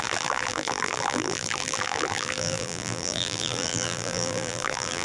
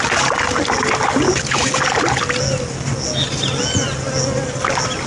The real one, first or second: second